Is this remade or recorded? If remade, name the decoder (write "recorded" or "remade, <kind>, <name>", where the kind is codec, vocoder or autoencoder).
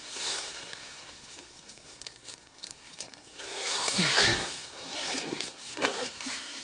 remade, codec, SNAC